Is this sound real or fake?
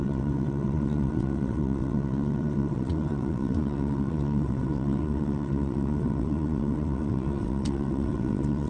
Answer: fake